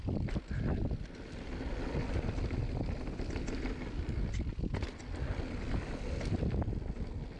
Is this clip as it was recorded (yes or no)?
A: yes